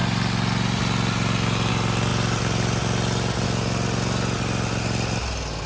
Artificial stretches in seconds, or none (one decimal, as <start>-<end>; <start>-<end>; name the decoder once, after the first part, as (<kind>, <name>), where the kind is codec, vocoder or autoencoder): none

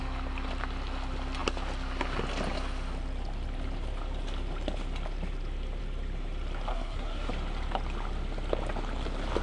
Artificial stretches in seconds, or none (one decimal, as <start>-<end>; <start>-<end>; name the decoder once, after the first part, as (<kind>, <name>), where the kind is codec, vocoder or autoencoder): 6.7-7.3 (codec, SNAC)

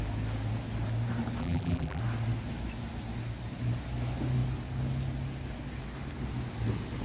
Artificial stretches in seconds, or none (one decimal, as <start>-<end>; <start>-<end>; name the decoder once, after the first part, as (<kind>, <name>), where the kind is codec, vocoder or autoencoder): 1.4-2.0 (vocoder, BigVGAN v2)

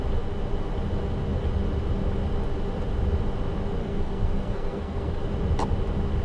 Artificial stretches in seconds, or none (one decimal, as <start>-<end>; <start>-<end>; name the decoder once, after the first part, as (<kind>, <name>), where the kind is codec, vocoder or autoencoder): 3.8-5.2 (codec, SNAC)

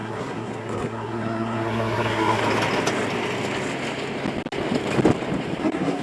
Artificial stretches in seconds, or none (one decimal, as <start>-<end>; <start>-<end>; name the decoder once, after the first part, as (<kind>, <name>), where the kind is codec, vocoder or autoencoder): 0.0-2.4 (codec, SNAC); 5.6-6.0